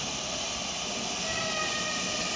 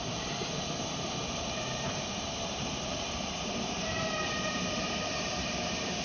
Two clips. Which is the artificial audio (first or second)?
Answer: second